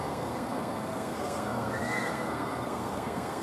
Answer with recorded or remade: remade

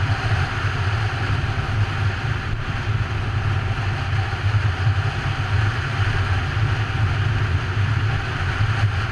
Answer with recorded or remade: recorded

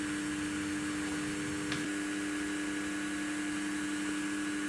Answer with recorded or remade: recorded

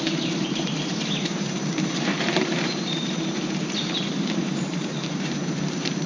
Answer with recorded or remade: remade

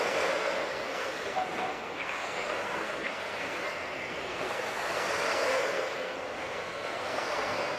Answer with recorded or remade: remade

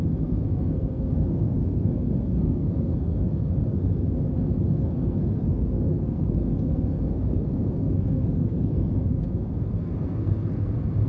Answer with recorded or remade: remade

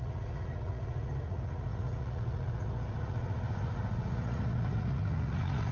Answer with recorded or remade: remade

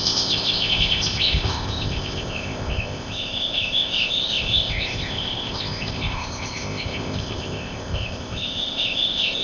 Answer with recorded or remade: remade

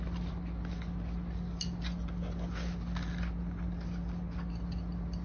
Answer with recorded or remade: recorded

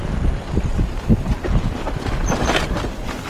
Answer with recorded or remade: recorded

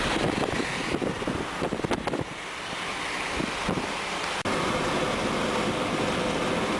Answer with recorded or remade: recorded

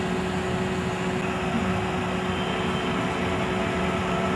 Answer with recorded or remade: recorded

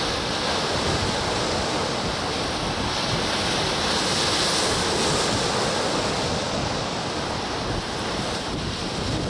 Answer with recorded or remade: recorded